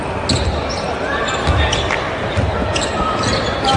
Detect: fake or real real